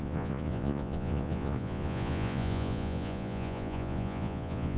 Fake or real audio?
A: fake